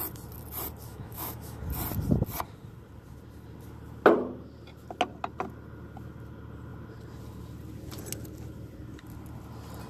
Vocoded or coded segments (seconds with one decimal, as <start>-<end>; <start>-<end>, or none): 0.9-1.6